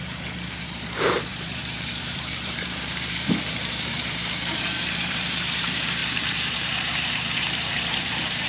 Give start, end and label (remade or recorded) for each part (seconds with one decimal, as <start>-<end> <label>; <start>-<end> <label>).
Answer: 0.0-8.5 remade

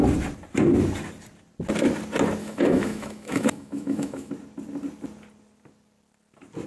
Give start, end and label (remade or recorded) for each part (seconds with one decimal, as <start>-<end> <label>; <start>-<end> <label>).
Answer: 0.0-2.4 recorded; 2.4-4.3 remade; 4.3-6.7 recorded

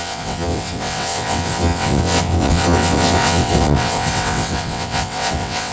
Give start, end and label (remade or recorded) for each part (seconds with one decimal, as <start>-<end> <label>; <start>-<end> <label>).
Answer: 0.0-5.7 remade

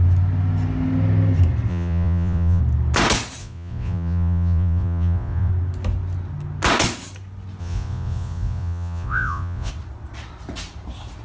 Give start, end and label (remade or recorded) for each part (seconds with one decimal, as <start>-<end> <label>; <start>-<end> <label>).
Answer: 0.0-1.7 recorded; 1.7-2.6 remade; 2.6-3.4 recorded; 3.4-5.5 remade; 5.5-7.6 recorded; 7.6-9.7 remade; 9.7-11.2 recorded